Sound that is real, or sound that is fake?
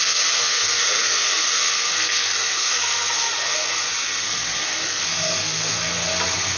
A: fake